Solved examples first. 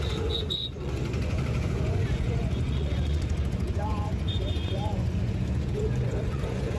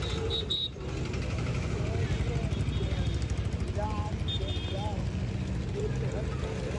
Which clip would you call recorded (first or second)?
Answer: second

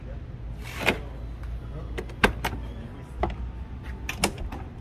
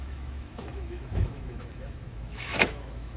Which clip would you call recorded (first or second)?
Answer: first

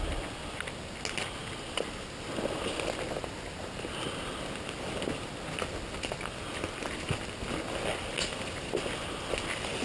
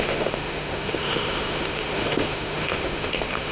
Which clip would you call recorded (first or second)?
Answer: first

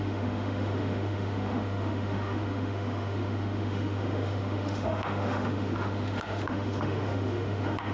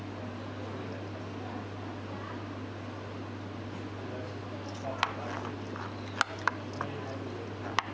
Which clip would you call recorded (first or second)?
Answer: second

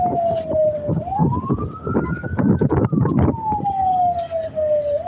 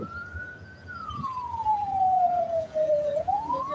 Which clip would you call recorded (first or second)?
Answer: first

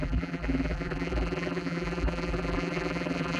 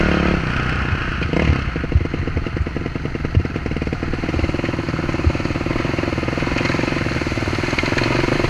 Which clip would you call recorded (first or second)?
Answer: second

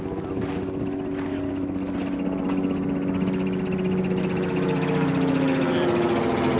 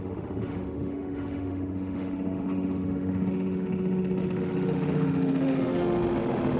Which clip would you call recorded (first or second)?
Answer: first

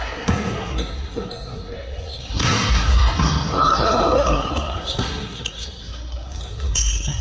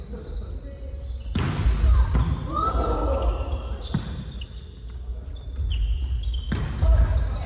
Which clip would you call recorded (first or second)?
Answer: second